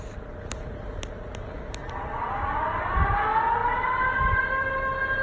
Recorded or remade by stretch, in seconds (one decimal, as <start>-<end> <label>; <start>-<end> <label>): 0.0-1.3 recorded; 1.3-2.6 remade; 2.6-3.6 recorded; 3.6-4.7 remade; 4.7-5.2 recorded